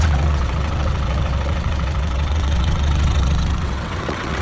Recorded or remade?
remade